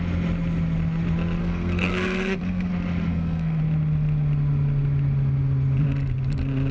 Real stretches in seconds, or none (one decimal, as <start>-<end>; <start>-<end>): 0.0-1.4; 2.7-3.1; 3.6-6.7